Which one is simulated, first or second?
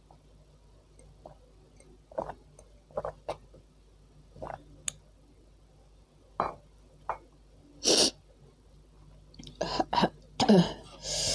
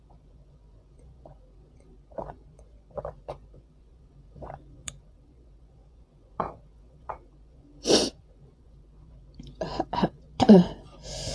second